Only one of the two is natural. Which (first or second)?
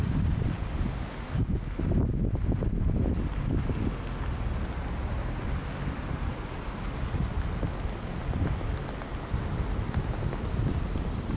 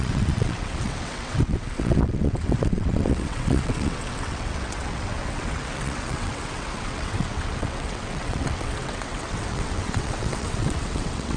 first